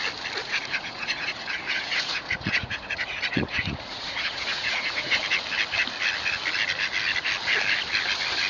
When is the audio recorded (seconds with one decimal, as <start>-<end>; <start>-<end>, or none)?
0.0-0.4; 5.2-8.5